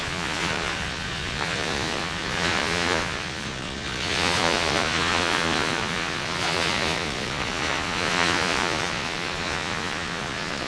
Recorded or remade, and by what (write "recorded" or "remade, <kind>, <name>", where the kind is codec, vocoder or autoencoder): remade, vocoder, Vocos